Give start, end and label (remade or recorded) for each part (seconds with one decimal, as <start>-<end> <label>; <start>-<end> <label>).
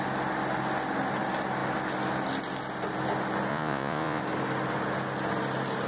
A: 0.0-3.5 recorded; 3.5-4.2 remade; 4.2-5.9 recorded